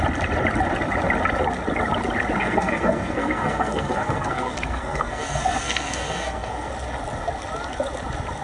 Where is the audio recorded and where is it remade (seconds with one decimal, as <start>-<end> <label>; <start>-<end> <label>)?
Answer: 0.0-2.4 recorded; 2.4-6.7 remade; 6.7-8.4 recorded